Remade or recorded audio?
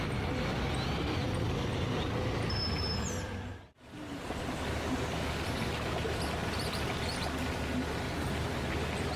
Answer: recorded